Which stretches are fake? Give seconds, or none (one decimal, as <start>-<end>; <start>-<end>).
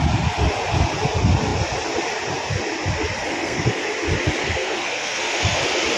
3.3-3.8; 4.4-5.6